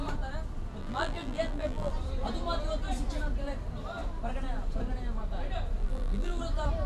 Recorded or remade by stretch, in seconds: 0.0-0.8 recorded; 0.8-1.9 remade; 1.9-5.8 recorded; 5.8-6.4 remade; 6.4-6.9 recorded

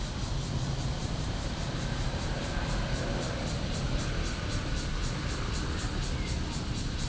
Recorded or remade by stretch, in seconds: 0.0-1.0 recorded; 1.0-3.3 remade; 3.3-4.9 recorded; 4.9-5.9 remade; 5.9-7.1 recorded

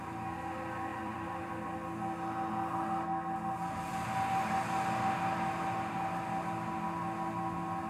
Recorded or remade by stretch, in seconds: 0.0-0.9 recorded; 0.9-1.5 remade; 1.5-7.9 recorded

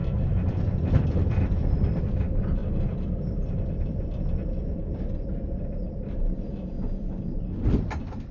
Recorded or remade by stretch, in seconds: 0.0-2.0 remade; 2.0-2.6 recorded; 2.6-5.9 remade; 5.9-8.3 recorded